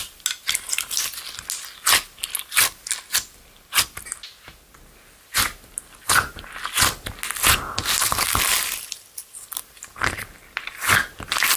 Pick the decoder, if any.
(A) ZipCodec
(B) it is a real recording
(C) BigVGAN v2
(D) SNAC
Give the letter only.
B